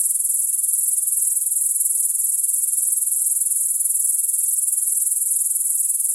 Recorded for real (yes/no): yes